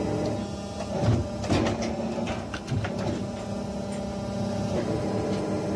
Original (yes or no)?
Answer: yes